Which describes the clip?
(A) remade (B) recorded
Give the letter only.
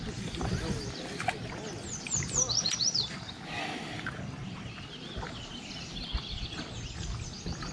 B